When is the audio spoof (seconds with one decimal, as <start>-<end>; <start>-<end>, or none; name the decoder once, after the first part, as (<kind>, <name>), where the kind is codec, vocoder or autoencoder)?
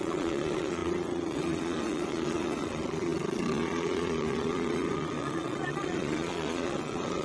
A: 0.0-7.2 (vocoder, Vocos)